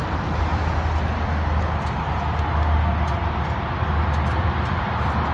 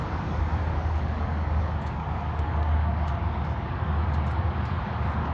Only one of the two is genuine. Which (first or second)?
first